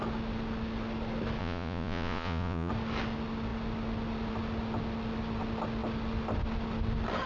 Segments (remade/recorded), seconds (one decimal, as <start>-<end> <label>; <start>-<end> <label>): 0.0-1.4 recorded; 1.4-2.7 remade; 2.7-7.3 recorded

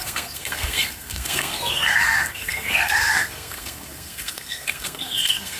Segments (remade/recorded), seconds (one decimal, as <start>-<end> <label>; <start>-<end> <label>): 0.0-5.6 remade

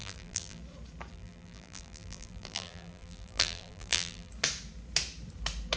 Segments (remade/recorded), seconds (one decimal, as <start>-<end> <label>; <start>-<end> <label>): 0.0-0.6 remade; 0.6-1.1 recorded; 1.1-4.3 remade; 4.3-5.8 recorded

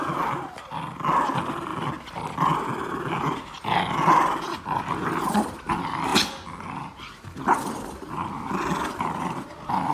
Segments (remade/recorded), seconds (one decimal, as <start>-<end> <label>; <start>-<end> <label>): 0.0-9.9 recorded